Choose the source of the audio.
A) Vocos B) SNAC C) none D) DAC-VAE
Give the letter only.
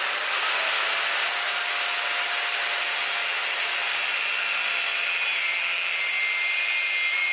C